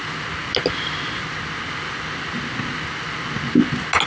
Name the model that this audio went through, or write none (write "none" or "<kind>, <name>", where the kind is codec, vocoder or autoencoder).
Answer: none